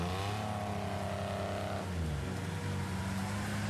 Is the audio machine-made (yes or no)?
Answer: no